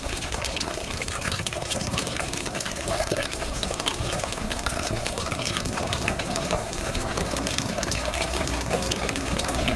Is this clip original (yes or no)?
no